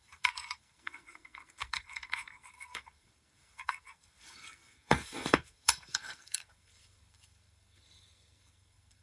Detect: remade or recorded remade